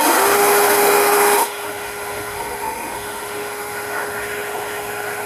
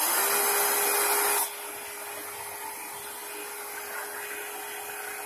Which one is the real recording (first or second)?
second